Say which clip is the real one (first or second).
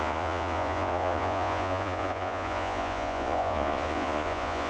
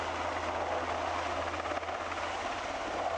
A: second